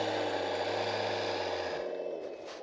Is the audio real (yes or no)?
yes